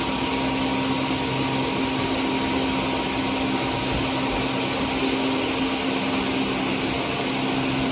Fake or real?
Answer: real